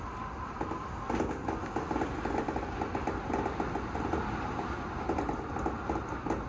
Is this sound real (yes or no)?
yes